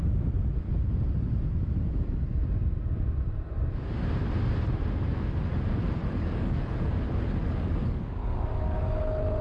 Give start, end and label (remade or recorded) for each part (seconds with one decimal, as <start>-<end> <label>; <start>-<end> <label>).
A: 0.0-6.0 recorded; 6.0-6.9 remade; 6.9-7.4 recorded; 7.4-9.0 remade; 9.0-9.4 recorded